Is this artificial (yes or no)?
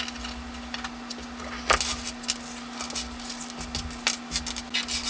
no